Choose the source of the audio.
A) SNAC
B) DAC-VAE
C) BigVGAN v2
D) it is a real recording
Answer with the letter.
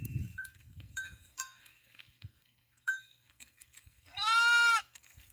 A